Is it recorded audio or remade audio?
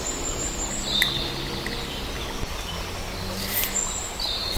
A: recorded